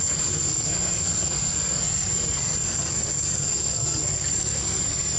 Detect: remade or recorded remade